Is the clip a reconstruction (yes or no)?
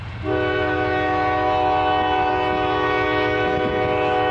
no